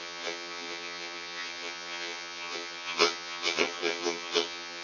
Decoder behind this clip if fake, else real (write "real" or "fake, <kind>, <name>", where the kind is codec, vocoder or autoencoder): fake, vocoder, HiFi-GAN